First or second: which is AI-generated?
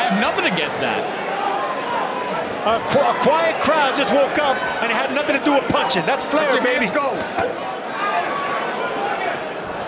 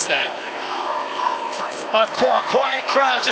second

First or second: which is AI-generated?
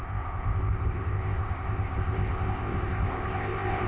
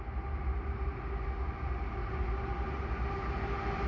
first